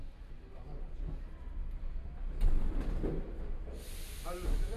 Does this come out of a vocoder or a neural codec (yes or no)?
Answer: no